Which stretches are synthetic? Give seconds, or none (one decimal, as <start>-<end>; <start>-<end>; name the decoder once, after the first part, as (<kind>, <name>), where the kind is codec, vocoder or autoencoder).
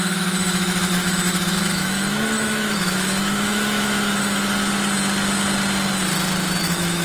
0.0-4.6 (autoencoder, DAC-VAE); 6.6-7.0